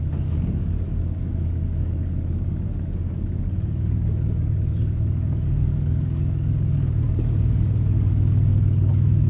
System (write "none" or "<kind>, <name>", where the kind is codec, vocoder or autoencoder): codec, DAC